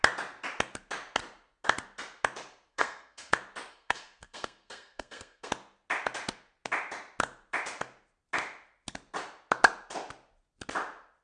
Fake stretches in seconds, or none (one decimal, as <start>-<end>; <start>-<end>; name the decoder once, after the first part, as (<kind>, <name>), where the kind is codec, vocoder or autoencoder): 2.7-3.3 (codec, SNAC); 3.7-5.5